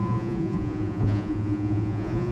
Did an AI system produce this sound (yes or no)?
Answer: yes